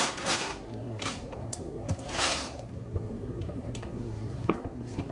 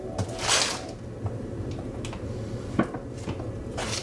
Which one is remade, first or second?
first